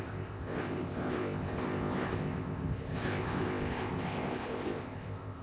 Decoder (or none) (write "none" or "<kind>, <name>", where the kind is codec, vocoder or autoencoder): codec, ZipCodec